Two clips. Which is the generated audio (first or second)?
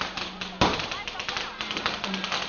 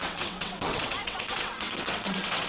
second